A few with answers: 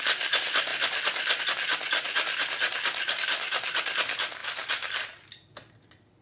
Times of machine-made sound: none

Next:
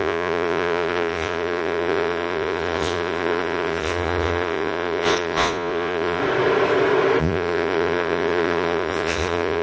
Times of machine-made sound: 0.0-6.2 (vocoder, Vocos); 7.2-9.6

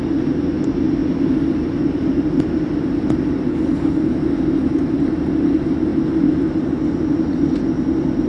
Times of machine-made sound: 3.5-4.1 (codec, HILCodec)

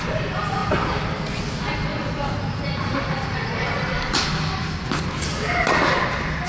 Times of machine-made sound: none